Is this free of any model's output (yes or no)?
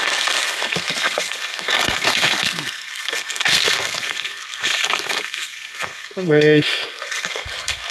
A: no